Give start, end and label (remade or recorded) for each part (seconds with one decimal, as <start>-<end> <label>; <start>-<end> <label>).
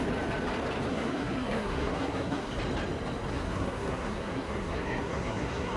0.0-0.9 recorded; 0.9-2.5 remade; 2.5-3.3 recorded; 3.3-5.8 remade